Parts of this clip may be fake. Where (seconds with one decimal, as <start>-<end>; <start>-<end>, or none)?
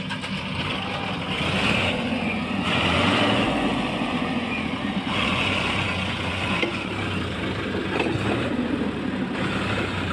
1.8-6.9